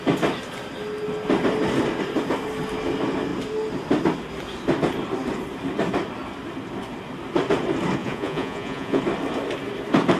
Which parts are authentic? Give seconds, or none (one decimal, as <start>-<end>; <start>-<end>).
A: 0.0-8.0; 9.0-10.2